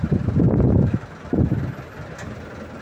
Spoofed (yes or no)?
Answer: no